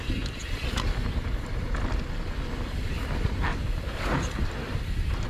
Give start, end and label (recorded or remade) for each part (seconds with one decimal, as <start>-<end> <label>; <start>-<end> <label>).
0.0-3.5 recorded; 3.5-5.3 remade